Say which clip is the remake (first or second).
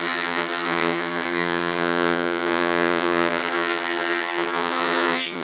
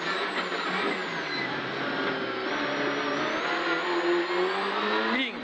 first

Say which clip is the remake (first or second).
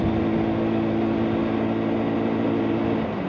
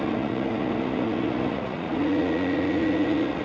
second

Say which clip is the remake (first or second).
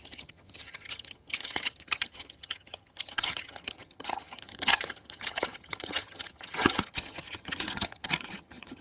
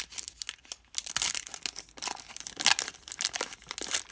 first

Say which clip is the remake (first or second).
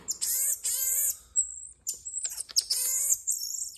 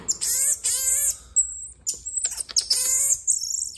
first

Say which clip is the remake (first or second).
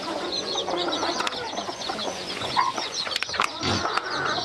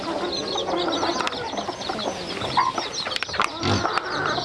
first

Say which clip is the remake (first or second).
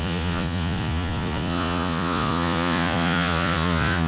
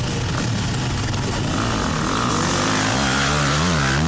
first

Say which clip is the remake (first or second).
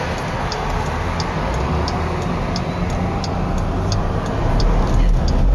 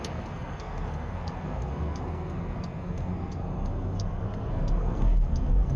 second